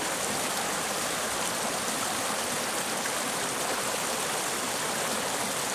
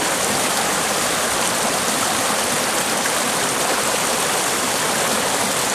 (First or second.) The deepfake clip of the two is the second